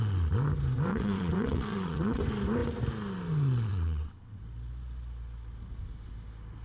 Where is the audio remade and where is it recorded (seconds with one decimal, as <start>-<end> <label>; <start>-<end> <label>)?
0.0-0.9 recorded; 0.9-2.2 remade; 2.2-3.7 recorded; 3.7-4.4 remade; 4.4-6.6 recorded